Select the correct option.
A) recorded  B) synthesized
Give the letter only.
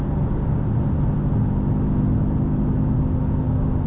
A